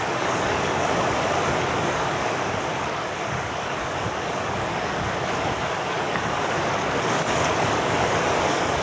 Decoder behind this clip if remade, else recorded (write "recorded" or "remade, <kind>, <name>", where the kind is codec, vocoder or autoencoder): remade, codec, DAC